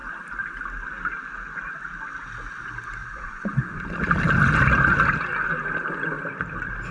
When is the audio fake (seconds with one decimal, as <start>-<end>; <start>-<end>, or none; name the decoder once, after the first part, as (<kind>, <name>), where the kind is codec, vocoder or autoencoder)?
3.0-3.8 (vocoder, Vocos)